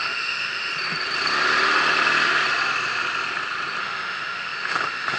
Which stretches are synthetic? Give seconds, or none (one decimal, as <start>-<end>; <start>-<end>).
0.0-0.7; 3.8-5.2